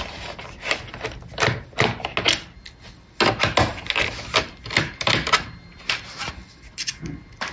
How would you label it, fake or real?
real